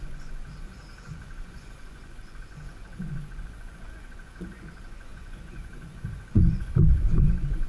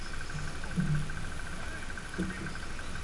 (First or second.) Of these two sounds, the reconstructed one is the first